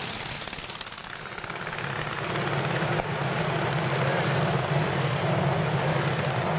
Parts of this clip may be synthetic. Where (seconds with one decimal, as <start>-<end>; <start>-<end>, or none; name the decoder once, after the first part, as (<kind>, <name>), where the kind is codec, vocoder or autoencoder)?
none